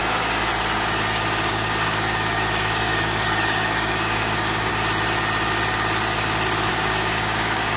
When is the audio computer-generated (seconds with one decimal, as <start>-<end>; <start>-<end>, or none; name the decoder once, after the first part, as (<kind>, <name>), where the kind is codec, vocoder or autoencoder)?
0.0-0.5 (codec, DAC); 1.5-4.7; 6.7-7.8